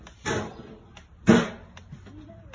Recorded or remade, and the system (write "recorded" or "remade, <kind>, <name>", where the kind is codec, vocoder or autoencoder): recorded